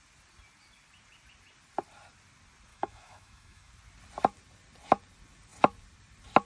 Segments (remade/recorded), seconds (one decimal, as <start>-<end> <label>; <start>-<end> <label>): 0.0-2.7 recorded; 2.7-3.7 remade; 3.7-6.5 recorded